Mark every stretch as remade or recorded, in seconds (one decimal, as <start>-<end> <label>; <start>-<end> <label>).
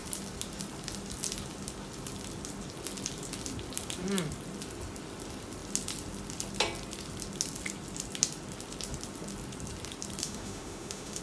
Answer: 0.0-10.2 recorded; 10.2-11.2 remade